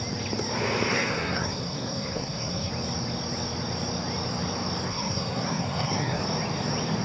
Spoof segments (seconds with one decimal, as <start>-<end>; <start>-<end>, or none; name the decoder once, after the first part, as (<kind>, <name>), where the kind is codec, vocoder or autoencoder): 0.9-2.7 (codec, SNAC); 4.9-6.2